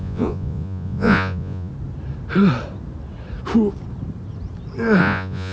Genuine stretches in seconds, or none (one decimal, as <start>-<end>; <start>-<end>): 1.7-5.0